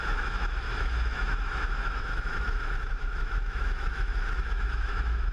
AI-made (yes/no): yes